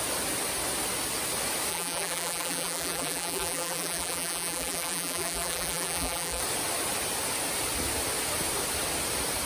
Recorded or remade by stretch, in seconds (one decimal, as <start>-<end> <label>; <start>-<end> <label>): 0.0-1.7 recorded; 1.7-6.4 remade; 6.4-9.5 recorded